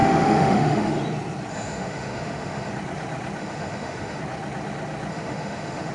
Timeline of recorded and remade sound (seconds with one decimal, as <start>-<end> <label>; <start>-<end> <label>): 0.0-1.0 remade; 1.0-1.5 recorded; 1.5-2.7 remade; 2.7-3.4 recorded; 3.4-4.2 remade; 4.2-5.1 recorded; 5.1-5.9 remade